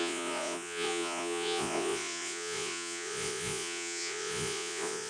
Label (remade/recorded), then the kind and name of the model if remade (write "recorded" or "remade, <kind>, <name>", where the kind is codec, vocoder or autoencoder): remade, vocoder, Vocos